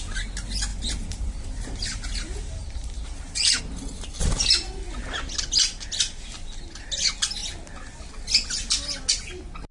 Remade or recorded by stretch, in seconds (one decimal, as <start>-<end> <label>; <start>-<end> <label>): 0.0-0.7 recorded; 0.7-3.6 remade; 3.6-9.7 recorded